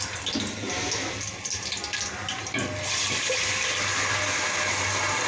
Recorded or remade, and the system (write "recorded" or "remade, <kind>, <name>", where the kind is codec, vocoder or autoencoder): recorded